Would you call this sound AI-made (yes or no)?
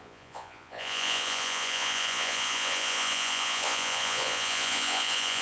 yes